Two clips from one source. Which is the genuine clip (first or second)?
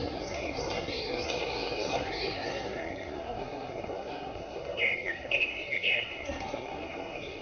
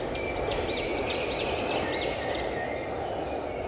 second